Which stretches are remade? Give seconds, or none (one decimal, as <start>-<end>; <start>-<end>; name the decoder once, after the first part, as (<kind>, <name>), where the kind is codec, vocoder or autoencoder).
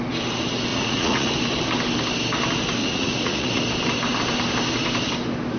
0.7-1.3 (vocoder, Vocos); 2.8-3.6